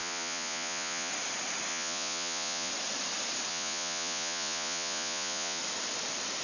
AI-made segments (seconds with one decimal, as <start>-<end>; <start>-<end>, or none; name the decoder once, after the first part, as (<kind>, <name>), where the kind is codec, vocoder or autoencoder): 0.0-1.1 (vocoder, Vocos); 1.7-2.7; 3.5-5.6